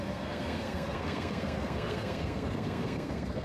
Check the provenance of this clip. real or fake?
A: fake